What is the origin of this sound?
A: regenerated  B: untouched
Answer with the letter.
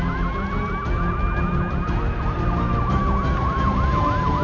B